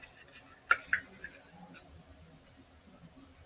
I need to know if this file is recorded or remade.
recorded